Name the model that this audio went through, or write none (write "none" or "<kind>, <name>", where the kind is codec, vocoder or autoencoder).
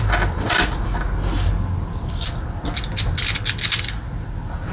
none